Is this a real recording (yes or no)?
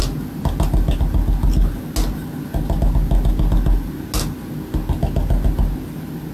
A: yes